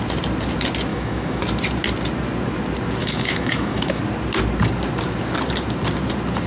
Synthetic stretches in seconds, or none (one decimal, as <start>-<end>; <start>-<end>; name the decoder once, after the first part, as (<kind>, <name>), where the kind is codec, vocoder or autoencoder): 0.9-1.4 (autoencoder, DAC-VAE); 3.0-4.0